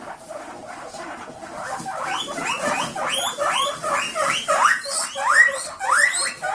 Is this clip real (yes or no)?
no